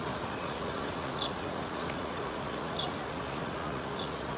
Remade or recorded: remade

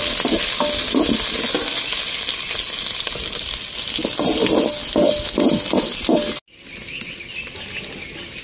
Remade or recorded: recorded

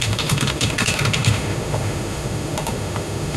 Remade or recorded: remade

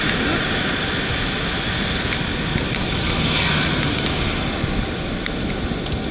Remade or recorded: recorded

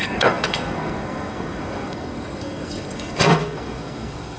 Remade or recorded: remade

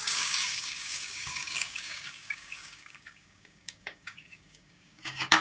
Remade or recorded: remade